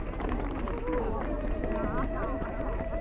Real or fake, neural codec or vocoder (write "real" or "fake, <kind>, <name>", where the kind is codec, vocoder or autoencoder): real